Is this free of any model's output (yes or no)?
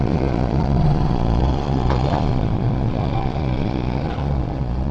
no